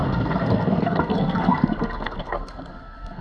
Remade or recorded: remade